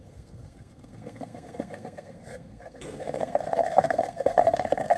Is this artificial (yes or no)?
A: yes